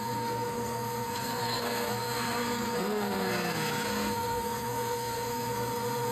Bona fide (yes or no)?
no